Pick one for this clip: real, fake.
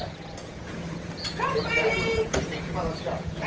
fake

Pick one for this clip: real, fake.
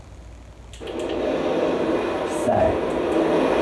real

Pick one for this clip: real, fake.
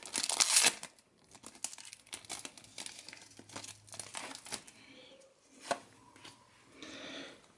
real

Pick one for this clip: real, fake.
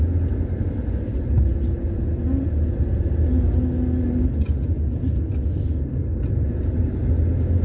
real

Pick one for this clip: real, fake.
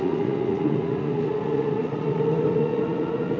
fake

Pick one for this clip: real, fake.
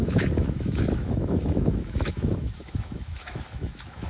fake